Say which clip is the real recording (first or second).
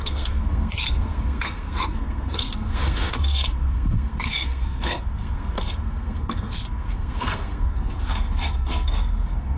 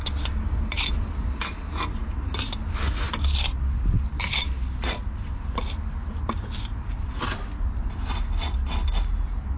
second